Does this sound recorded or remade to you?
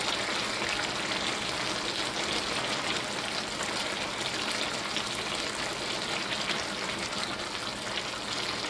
recorded